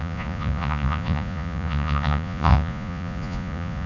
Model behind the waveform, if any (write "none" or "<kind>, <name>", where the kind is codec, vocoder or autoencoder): vocoder, Vocos